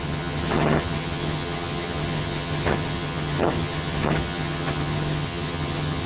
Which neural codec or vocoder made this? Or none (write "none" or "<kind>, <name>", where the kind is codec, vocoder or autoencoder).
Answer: vocoder, HiFi-GAN